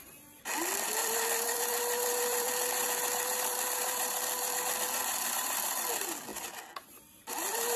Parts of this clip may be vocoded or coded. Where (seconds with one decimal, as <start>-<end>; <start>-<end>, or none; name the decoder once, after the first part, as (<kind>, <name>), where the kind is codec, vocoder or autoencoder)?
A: 1.0-4.6 (vocoder, BigVGAN v2); 5.0-5.7; 6.3-7.8